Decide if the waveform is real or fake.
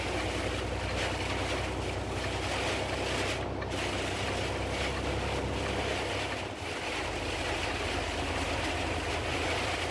real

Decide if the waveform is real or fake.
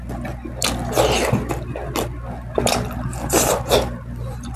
real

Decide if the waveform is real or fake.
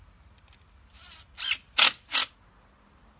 real